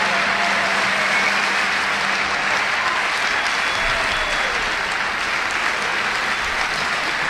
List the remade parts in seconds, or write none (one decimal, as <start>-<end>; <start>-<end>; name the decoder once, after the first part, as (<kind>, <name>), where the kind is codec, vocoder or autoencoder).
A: none